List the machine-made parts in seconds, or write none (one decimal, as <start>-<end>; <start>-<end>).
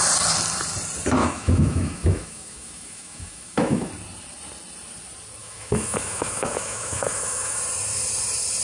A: 1.2-3.9; 5.4-7.6